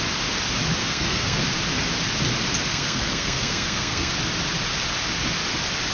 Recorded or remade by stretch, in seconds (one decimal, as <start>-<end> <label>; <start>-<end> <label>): 0.0-0.8 recorded; 0.8-1.4 remade; 1.4-2.7 recorded; 2.7-4.1 remade; 4.1-5.9 recorded